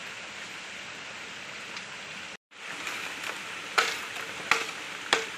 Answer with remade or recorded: recorded